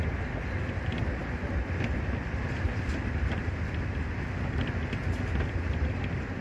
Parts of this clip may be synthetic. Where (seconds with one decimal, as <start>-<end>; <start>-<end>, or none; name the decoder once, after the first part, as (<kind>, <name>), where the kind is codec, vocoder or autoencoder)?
none